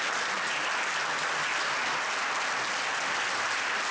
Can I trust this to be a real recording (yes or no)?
yes